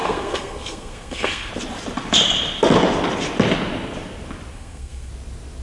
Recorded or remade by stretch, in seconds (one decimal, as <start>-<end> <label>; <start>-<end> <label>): 0.0-1.5 remade; 1.5-4.5 recorded; 4.5-5.1 remade; 5.1-5.6 recorded